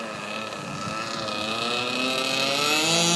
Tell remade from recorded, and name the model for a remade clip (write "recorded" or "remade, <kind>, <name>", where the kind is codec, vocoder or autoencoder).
recorded